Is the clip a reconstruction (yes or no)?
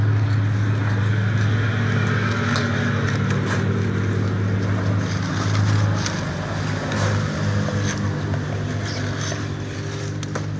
no